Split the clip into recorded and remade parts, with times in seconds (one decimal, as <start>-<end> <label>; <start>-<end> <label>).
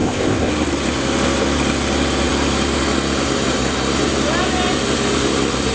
0.0-0.5 remade; 0.5-5.7 recorded